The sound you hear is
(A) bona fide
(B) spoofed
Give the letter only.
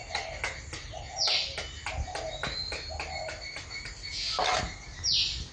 A